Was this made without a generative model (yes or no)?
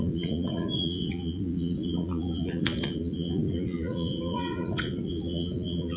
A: no